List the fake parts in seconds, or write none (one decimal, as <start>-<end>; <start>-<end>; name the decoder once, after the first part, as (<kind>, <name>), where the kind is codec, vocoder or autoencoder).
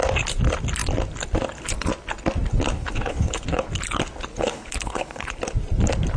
2.7-3.7 (codec, HILCodec); 4.3-5.4